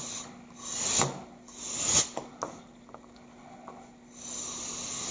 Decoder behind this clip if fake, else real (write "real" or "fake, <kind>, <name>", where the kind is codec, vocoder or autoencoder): real